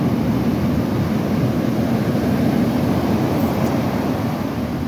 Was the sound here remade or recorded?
recorded